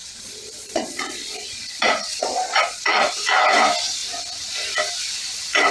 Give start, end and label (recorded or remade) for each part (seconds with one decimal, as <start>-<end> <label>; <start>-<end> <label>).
0.0-3.1 remade; 3.1-5.7 recorded